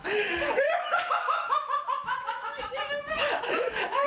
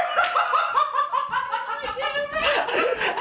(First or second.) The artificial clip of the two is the first